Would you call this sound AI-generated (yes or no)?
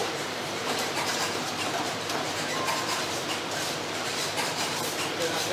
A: yes